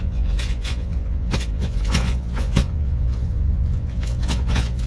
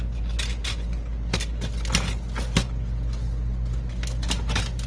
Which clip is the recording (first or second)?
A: second